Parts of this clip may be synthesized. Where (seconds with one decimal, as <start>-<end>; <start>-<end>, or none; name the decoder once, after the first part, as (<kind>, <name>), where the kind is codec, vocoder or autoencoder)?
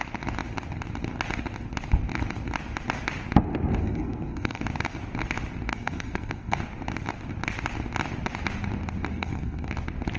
3.8-4.6 (codec, SNAC); 5.7-6.6; 9.1-9.7